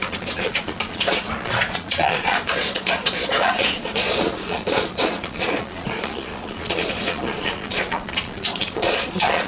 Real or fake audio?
fake